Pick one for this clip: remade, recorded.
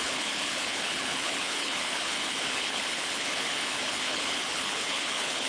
remade